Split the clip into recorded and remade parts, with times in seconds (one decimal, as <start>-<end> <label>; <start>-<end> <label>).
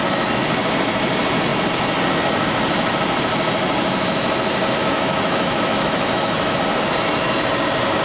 0.0-4.8 recorded; 4.8-6.5 remade; 6.5-8.0 recorded